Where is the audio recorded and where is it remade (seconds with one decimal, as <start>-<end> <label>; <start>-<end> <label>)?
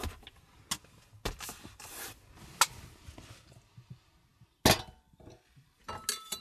0.0-6.4 recorded